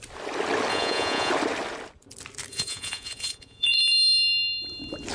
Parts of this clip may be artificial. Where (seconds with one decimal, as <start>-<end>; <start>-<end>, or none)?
0.7-1.3; 2.5-3.8